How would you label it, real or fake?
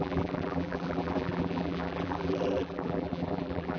fake